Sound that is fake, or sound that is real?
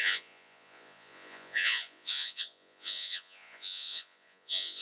fake